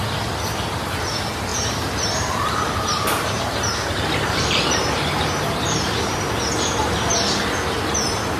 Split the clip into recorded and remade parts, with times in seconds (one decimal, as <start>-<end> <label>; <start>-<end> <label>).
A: 0.0-1.5 recorded; 1.5-6.4 remade; 6.4-8.4 recorded

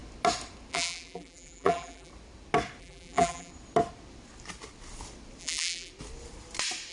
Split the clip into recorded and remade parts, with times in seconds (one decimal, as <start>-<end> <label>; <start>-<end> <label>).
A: 0.0-0.7 recorded; 0.7-2.1 remade; 2.1-2.8 recorded; 2.8-3.5 remade; 3.5-5.4 recorded; 5.4-5.9 remade; 5.9-6.9 recorded

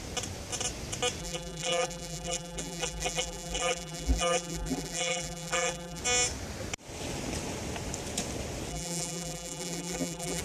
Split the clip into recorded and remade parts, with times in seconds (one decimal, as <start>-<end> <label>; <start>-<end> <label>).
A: 0.0-1.2 recorded; 1.2-6.0 remade; 6.0-8.7 recorded; 8.7-10.4 remade

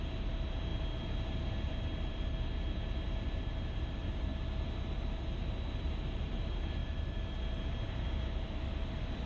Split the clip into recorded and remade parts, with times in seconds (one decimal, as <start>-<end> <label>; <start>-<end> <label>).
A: 0.0-0.7 remade; 0.7-1.6 recorded; 1.6-4.3 remade; 4.3-6.2 recorded; 6.2-9.3 remade